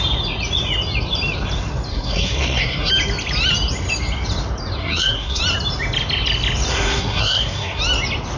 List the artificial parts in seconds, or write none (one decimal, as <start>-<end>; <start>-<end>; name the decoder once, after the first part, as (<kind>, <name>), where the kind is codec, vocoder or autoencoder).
1.9-2.9 (codec, SNAC); 4.8-5.4; 6.7-7.8